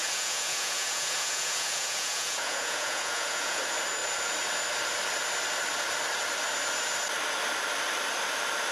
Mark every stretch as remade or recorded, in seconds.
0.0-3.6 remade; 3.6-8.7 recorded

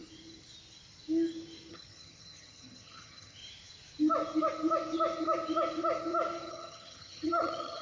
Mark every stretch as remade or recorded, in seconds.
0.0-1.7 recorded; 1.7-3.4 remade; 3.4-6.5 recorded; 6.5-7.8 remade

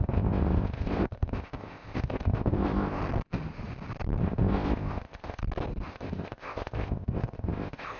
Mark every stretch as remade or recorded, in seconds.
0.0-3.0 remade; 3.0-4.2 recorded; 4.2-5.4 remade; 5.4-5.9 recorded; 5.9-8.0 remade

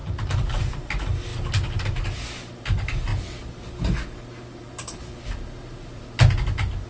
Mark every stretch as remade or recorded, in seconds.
0.0-6.9 recorded

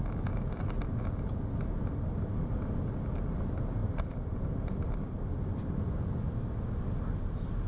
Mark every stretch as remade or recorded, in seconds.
0.0-2.3 recorded; 2.3-3.1 remade; 3.1-3.8 recorded; 3.8-5.2 remade; 5.2-7.7 recorded